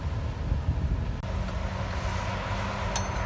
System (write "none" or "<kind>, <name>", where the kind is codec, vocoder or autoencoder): none